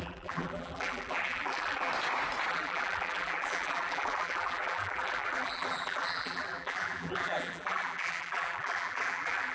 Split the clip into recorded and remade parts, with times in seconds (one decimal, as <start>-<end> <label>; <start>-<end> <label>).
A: 0.0-1.9 remade; 1.9-2.5 recorded; 2.5-9.5 remade